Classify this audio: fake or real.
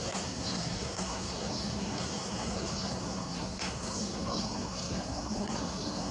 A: fake